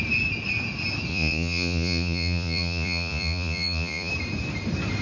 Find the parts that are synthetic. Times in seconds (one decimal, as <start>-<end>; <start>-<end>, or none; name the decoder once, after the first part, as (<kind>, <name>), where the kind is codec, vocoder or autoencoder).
1.1-4.1 (vocoder, Vocos)